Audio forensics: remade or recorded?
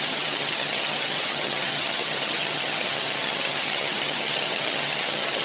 remade